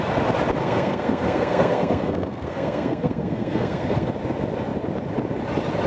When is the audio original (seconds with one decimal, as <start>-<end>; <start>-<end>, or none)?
0.0-0.6; 4.1-5.9